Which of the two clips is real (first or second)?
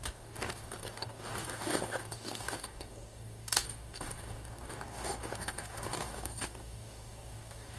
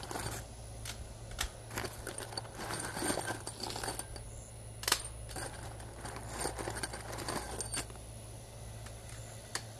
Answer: second